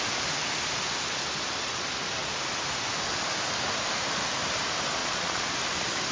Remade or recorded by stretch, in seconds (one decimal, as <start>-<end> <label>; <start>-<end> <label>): 0.0-5.0 recorded; 5.0-5.6 remade; 5.6-6.1 recorded